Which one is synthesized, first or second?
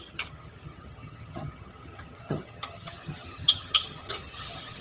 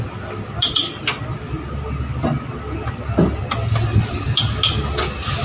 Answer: first